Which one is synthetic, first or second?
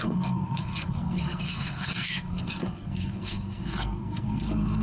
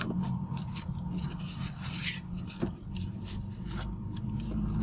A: first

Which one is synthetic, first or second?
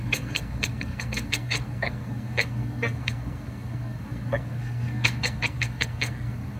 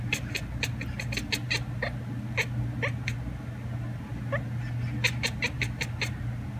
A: first